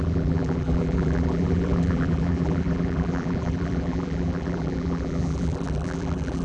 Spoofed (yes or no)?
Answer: yes